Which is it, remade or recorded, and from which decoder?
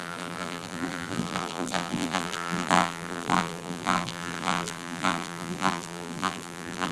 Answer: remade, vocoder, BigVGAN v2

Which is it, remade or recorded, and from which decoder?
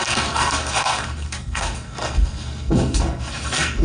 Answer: remade, codec, SNAC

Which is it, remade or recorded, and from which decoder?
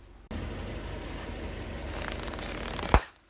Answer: recorded